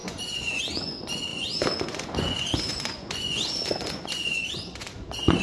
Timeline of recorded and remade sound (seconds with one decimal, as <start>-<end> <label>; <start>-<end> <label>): 0.0-5.4 remade